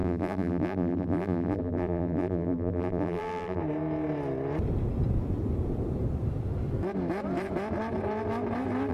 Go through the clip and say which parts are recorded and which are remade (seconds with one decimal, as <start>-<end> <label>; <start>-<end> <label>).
0.0-3.6 remade; 3.6-8.9 recorded